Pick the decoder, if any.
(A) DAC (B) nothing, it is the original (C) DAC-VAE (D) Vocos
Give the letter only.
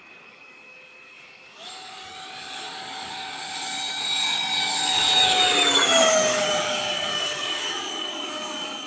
A